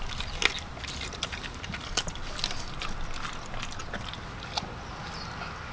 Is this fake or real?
real